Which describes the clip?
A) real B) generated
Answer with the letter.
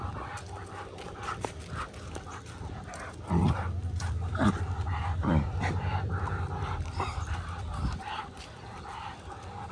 B